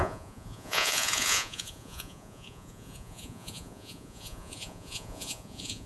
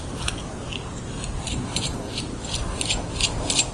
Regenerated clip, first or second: first